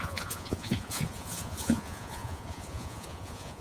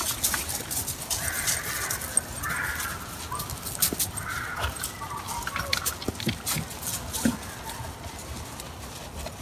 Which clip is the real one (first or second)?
second